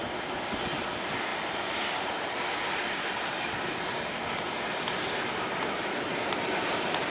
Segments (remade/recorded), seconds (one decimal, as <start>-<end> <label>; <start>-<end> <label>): 0.0-1.3 recorded; 1.3-2.5 remade; 2.5-6.1 recorded; 6.1-7.1 remade